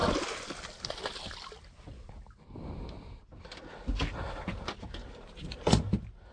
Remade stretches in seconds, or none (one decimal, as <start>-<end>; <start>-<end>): none